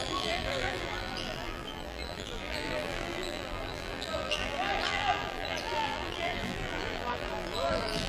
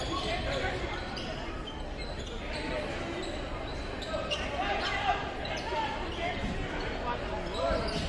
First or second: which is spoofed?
first